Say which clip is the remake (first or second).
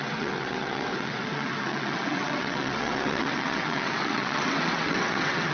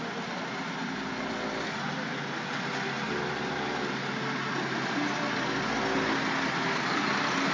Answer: first